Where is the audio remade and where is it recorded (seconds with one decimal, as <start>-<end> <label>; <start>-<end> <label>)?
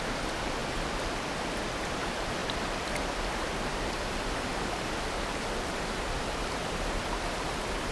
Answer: 0.0-7.9 remade